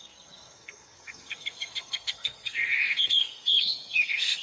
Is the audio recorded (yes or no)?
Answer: no